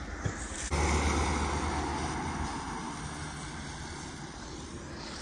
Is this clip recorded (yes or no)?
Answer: yes